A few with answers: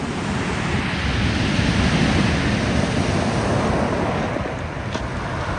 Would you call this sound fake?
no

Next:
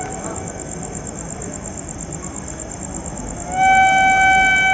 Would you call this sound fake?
no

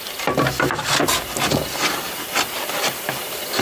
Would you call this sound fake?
no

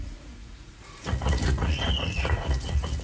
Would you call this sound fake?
yes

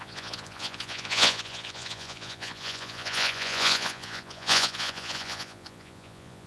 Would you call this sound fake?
yes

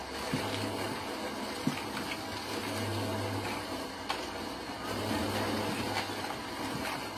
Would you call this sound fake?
no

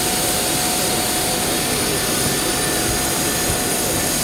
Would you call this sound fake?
no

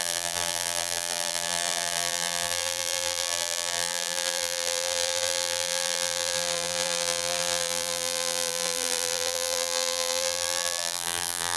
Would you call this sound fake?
yes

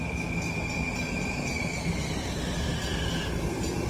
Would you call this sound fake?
no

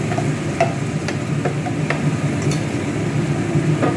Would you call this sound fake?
no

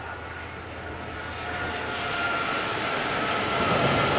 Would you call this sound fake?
no